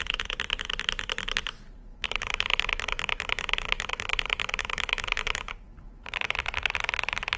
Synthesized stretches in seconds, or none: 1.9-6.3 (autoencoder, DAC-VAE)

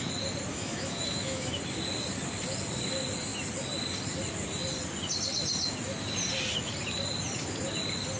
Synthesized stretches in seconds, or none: 0.5-1.6 (autoencoder, DAC-VAE)

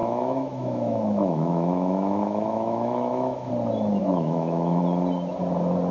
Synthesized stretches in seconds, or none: 0.0-3.5 (autoencoder, DAC-VAE); 4.0-4.8

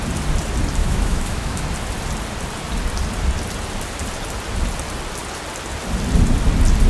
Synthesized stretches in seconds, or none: 0.8-1.6 (autoencoder, DAC-VAE)

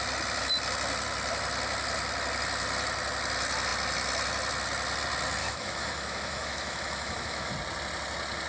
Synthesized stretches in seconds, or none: 5.4-7.5 (autoencoder, DAC-VAE)

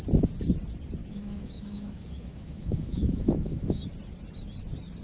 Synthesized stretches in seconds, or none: 1.0-3.8 (autoencoder, DAC-VAE)

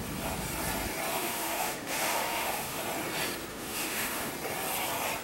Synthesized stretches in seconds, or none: 1.1-2.8 (autoencoder, DAC-VAE); 3.5-4.3